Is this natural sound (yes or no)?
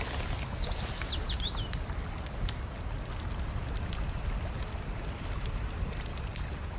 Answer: yes